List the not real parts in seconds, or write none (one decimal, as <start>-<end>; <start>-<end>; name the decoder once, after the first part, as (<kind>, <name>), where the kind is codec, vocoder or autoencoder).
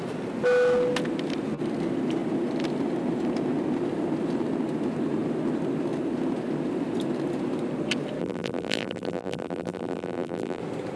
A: 8.2-10.6 (vocoder, BigVGAN v2)